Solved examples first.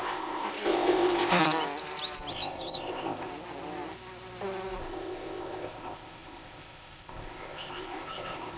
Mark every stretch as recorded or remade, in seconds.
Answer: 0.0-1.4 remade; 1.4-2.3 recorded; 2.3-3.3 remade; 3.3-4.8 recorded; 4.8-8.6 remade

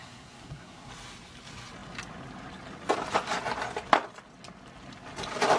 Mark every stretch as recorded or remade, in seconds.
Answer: 0.0-0.9 remade; 0.9-5.6 recorded

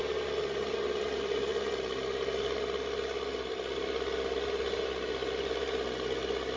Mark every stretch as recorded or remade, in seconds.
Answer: 0.0-6.6 recorded

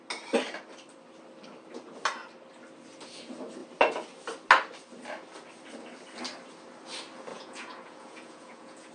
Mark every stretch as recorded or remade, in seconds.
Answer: 0.0-7.3 recorded; 7.3-8.9 remade

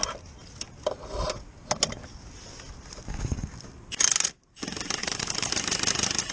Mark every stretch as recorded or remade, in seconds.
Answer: 0.0-5.0 recorded; 5.0-5.5 remade; 5.5-6.3 recorded